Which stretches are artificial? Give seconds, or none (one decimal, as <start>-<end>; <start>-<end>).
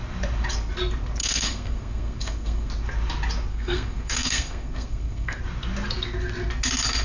1.2-2.7; 3.5-5.4